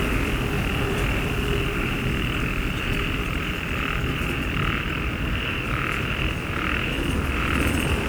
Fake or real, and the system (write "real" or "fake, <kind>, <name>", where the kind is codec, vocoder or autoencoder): fake, vocoder, BigVGAN v2